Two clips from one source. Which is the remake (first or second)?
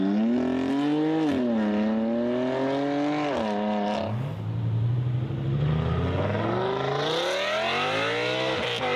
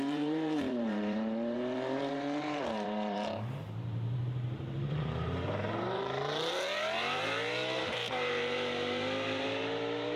second